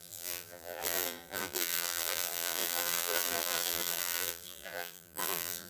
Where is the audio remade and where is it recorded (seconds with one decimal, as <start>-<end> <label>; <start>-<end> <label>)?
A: 0.0-5.7 remade